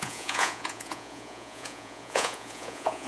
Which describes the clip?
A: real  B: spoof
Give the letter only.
B